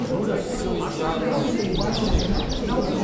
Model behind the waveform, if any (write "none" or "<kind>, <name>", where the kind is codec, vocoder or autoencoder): none